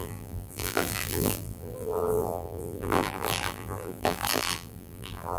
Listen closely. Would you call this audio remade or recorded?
remade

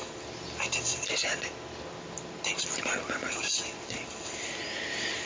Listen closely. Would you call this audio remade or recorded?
recorded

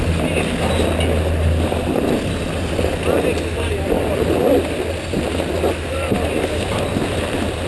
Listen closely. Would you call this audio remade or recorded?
recorded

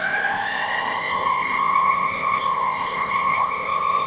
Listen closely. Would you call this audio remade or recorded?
remade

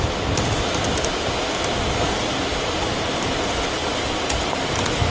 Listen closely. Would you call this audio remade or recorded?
recorded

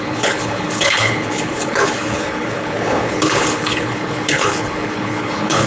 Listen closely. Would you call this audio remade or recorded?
remade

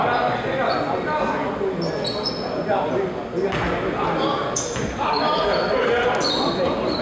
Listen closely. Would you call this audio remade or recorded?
recorded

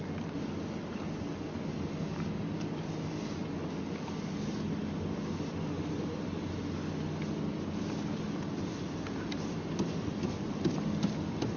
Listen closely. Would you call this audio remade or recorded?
recorded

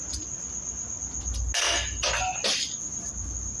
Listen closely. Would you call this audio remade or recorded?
recorded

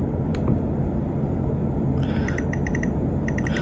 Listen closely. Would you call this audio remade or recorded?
recorded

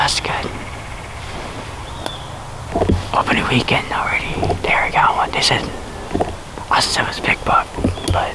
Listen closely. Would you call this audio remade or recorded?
recorded